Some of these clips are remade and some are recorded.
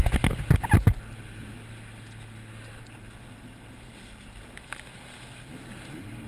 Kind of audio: recorded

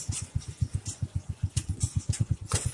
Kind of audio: remade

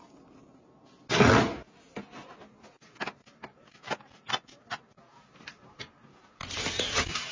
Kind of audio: recorded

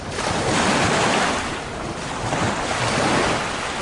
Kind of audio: recorded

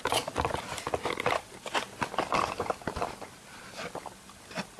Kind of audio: recorded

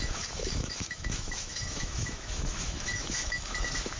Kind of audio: remade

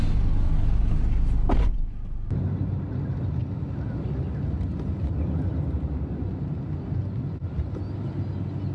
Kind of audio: recorded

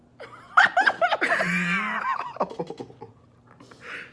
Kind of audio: recorded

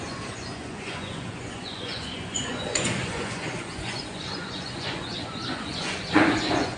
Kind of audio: remade